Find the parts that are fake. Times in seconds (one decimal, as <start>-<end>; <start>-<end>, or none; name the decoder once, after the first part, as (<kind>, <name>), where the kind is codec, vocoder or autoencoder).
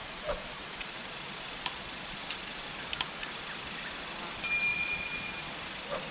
0.0-2.2 (vocoder, Vocos); 4.7-5.5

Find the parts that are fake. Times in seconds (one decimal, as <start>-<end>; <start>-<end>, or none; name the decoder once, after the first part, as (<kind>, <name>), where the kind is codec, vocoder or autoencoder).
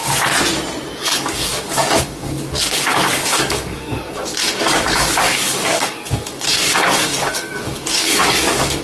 1.0-8.8 (codec, DAC)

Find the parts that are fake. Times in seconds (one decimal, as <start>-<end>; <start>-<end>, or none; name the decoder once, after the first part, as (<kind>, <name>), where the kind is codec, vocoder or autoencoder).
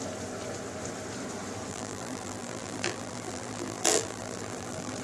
1.7-5.0 (vocoder, BigVGAN v2)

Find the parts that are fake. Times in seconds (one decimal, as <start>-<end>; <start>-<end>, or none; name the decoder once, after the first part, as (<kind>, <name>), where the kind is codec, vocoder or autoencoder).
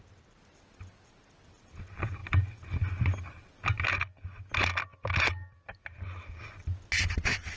none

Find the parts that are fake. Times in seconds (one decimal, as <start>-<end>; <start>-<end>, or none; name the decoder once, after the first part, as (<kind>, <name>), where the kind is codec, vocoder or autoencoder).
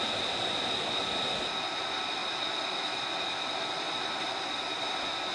none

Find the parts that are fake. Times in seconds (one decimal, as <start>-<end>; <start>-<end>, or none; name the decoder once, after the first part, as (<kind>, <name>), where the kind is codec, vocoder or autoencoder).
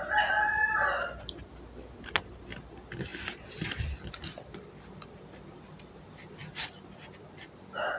none